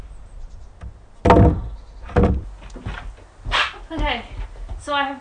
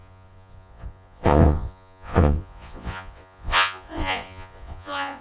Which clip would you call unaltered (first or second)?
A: first